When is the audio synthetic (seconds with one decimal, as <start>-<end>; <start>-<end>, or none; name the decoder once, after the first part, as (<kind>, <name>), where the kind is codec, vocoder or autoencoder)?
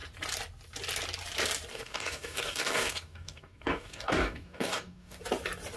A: 1.7-5.2 (codec, DAC)